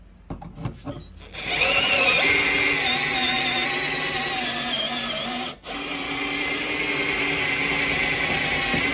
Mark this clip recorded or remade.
recorded